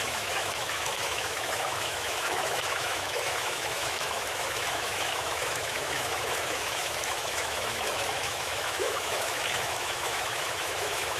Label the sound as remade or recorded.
remade